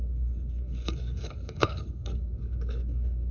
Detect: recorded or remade remade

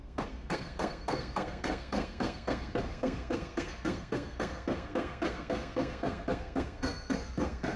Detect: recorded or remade remade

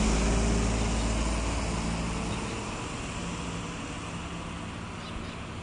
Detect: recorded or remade recorded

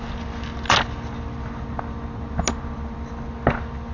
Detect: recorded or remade recorded